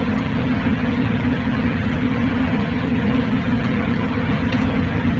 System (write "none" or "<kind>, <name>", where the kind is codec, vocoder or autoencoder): vocoder, HiFi-GAN